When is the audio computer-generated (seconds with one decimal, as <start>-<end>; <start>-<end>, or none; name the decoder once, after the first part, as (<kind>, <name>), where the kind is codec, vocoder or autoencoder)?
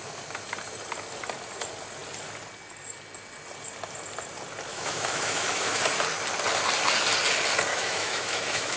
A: 4.7-5.8 (autoencoder, DAC-VAE); 7.7-8.8